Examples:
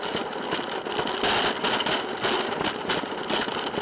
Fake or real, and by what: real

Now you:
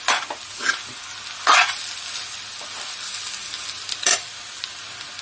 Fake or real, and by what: real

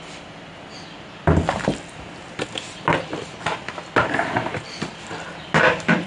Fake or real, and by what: real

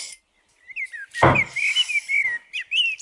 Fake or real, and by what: real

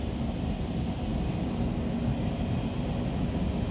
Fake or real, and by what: real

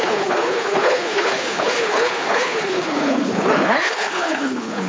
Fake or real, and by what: fake, codec, HILCodec